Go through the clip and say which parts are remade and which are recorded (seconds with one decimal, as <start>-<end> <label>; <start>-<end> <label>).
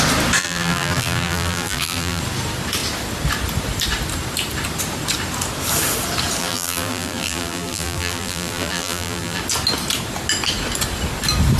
0.0-0.4 recorded; 0.4-2.2 remade; 2.2-6.4 recorded; 6.4-9.4 remade; 9.4-11.6 recorded